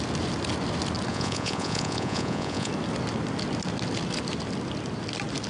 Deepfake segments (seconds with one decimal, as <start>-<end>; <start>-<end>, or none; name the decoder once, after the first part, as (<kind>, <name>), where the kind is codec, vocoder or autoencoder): 1.1-2.7 (vocoder, Vocos)